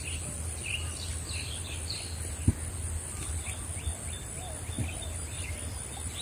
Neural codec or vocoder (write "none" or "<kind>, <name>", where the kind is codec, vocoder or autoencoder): none